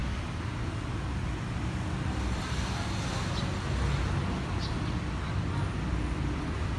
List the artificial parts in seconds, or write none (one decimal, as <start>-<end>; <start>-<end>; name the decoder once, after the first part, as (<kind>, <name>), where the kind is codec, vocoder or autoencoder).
none